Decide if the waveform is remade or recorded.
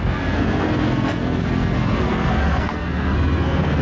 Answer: remade